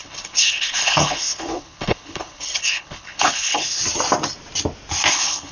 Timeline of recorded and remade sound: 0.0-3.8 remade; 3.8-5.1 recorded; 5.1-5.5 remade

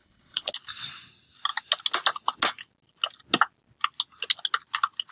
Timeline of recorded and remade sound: 0.0-0.5 remade; 0.5-5.1 recorded

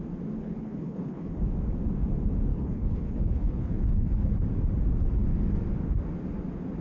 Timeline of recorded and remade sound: 0.0-0.4 recorded; 0.4-1.3 remade; 1.3-2.5 recorded; 2.5-4.3 remade; 4.3-6.8 recorded

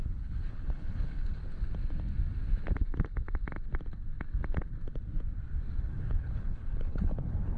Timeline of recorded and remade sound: 0.0-1.4 remade; 1.4-5.8 recorded; 5.8-7.6 remade

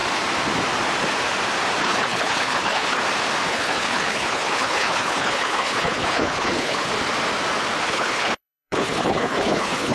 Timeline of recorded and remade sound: 0.0-1.8 recorded; 1.8-3.0 remade; 3.0-3.5 recorded; 3.5-6.9 remade; 6.9-7.8 recorded; 7.8-9.9 remade